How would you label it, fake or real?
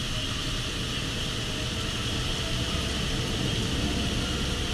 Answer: real